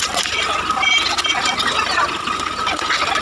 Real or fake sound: real